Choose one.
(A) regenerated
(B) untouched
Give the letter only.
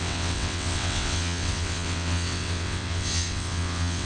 A